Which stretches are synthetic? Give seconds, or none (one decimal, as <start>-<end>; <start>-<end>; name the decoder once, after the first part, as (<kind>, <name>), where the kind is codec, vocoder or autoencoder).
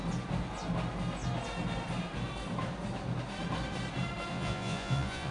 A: 4.3-5.3 (vocoder, Vocos)